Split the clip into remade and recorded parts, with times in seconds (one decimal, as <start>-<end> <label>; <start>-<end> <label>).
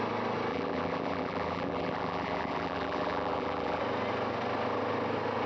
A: 0.0-0.5 recorded; 0.5-3.8 remade; 3.8-5.5 recorded